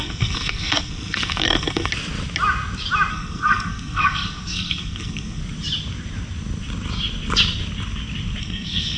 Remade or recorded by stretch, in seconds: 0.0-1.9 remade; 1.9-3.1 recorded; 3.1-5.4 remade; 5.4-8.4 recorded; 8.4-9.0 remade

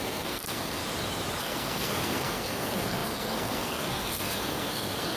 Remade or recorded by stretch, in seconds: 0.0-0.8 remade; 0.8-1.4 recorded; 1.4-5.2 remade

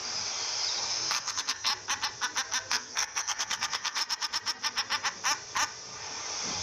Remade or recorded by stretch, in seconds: 0.0-0.8 recorded; 0.8-1.7 remade; 1.7-2.7 recorded; 2.7-4.0 remade; 4.0-6.6 recorded

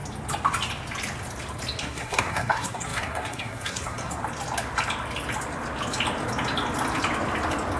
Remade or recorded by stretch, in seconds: 0.0-1.8 recorded; 1.8-4.2 remade; 4.2-7.8 recorded

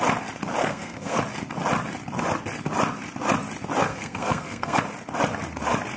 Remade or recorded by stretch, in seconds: 0.0-0.6 recorded; 0.6-1.2 remade; 1.2-3.9 recorded; 3.9-4.8 remade; 4.8-6.0 recorded

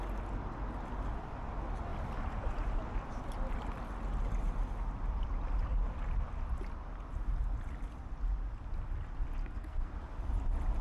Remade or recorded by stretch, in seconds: 0.0-9.4 recorded; 9.4-9.9 remade; 9.9-10.8 recorded